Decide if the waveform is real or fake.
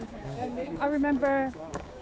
fake